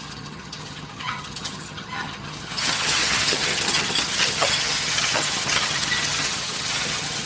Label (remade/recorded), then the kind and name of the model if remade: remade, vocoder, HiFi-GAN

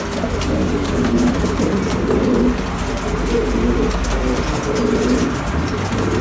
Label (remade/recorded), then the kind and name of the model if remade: recorded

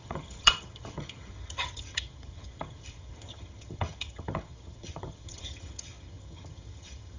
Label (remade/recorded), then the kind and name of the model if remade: remade, vocoder, HiFi-GAN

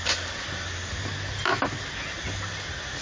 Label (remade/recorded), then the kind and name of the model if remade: recorded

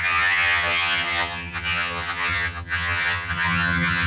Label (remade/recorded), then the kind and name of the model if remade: remade, vocoder, HiFi-GAN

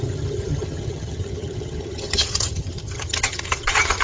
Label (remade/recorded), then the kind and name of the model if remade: remade, vocoder, HiFi-GAN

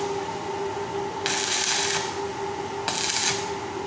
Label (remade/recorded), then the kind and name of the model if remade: recorded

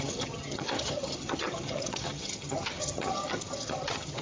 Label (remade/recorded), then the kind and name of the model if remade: remade, vocoder, HiFi-GAN